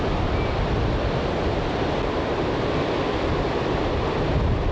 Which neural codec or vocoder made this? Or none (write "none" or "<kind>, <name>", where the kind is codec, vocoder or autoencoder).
none